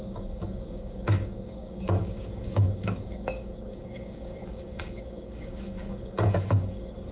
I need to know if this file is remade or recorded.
remade